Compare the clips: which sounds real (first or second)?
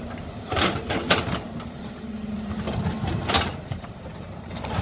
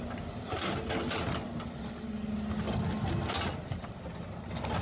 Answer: second